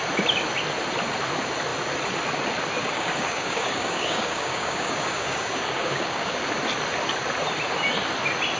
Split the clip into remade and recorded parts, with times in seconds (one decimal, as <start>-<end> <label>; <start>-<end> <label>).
0.0-2.8 recorded; 2.8-6.4 remade; 6.4-8.6 recorded